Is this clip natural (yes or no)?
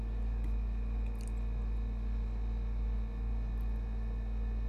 yes